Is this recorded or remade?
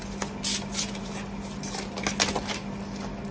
recorded